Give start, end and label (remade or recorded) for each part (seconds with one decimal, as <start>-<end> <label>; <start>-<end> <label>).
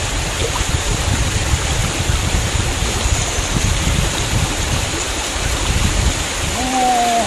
0.0-0.4 recorded; 0.4-1.2 remade; 1.2-1.8 recorded; 1.8-6.2 remade; 6.2-7.3 recorded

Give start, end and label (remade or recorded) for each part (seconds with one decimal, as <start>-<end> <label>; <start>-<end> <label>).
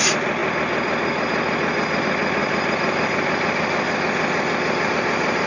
0.0-0.4 remade; 0.4-2.0 recorded; 2.0-5.5 remade